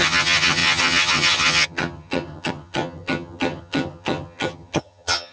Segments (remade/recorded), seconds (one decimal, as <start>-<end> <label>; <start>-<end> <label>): 0.0-5.3 remade